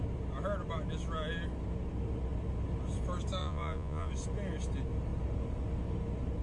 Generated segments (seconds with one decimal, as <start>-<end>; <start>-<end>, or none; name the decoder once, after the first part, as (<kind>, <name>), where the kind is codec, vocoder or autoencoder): 3.4-4.1 (vocoder, Vocos)